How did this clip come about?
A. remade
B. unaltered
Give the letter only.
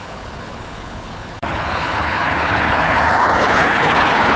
A